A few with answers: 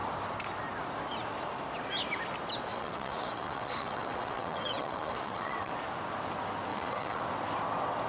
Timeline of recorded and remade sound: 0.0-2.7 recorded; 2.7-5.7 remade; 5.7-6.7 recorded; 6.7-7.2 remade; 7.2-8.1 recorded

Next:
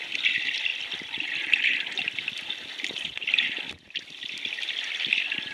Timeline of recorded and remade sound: 0.0-5.5 recorded

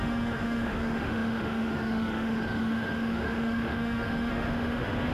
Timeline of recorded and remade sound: 0.0-5.1 remade

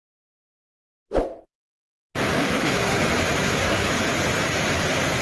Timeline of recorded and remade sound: 0.0-2.4 recorded; 2.4-3.0 remade; 3.0-3.4 recorded; 3.4-3.9 remade; 3.9-5.2 recorded

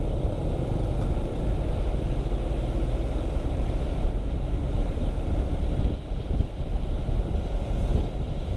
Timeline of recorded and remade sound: 0.0-8.6 recorded